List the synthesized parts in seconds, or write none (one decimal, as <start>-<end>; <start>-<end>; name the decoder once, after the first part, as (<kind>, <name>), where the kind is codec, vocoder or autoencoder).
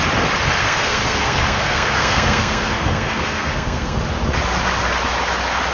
0.6-4.0 (codec, SNAC)